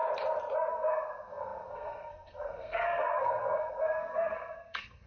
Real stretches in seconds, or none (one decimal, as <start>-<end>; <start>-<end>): 0.0-0.7